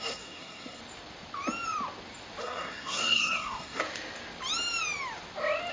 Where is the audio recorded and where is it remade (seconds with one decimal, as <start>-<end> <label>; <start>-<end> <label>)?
0.0-0.8 remade; 0.8-2.4 recorded; 2.4-3.8 remade; 3.8-5.7 recorded